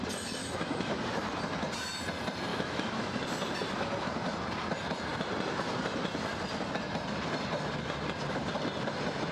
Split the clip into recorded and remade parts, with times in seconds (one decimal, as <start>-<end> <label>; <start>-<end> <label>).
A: 0.0-0.4 recorded; 0.4-1.0 remade; 1.0-2.5 recorded; 2.5-3.1 remade; 3.1-9.3 recorded